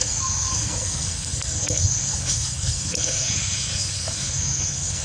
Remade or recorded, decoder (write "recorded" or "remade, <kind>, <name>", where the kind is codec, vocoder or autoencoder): remade, codec, SNAC